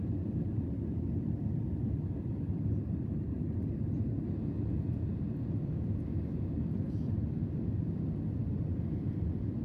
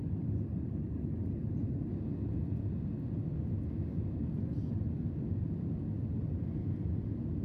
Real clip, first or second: second